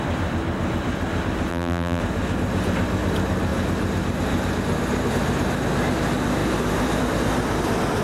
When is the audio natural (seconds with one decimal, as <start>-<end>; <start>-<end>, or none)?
0.0-1.5; 2.0-8.0